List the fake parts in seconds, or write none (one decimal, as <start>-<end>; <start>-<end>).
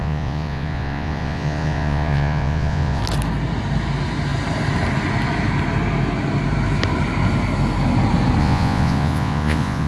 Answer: 0.0-3.0; 8.4-9.9